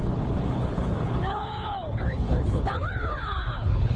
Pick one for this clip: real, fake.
fake